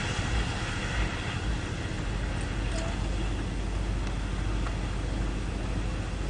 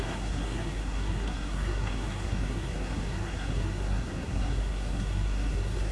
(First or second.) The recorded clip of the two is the first